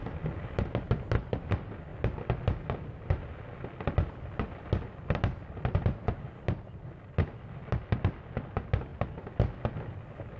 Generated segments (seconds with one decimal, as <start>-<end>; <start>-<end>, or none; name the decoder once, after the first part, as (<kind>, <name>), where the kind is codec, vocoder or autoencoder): none